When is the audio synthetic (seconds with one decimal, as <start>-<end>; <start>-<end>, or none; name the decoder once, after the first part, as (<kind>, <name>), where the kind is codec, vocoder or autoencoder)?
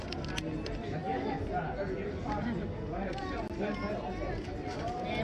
none